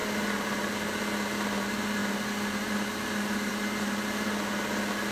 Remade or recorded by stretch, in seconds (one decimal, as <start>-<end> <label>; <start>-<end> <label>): 0.0-5.1 recorded